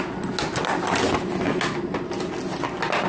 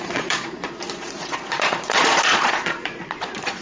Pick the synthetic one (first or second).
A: second